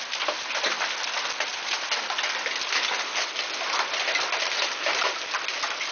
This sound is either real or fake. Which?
real